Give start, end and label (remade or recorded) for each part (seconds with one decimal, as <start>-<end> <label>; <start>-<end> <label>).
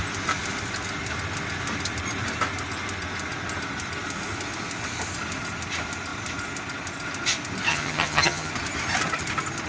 0.0-7.7 recorded; 7.7-8.5 remade; 8.5-9.7 recorded